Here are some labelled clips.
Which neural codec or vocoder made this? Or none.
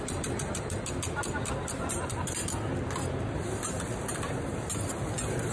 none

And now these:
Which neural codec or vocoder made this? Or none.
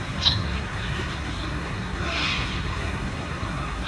codec, SNAC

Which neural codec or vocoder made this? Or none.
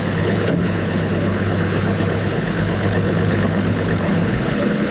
codec, HILCodec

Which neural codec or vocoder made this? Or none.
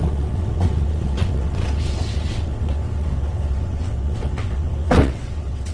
vocoder, WaveNeXt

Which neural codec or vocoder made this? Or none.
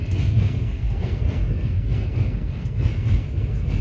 codec, SNAC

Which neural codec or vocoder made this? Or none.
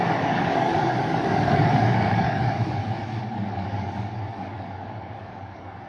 codec, DAC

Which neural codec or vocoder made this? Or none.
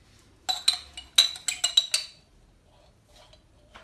none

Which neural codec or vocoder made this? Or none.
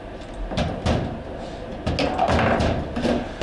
none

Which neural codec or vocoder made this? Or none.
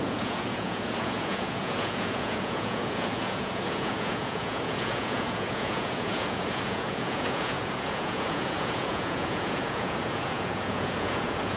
vocoder, Vocos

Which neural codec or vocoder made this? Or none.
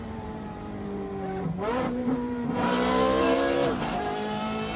vocoder, BigVGAN v2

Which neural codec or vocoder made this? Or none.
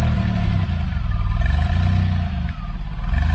none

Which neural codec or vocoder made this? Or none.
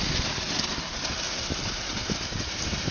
none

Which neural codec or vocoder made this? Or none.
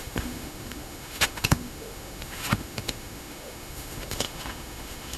autoencoder, DAC-VAE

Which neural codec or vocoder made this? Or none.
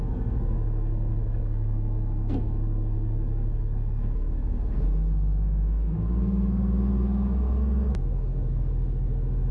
codec, SNAC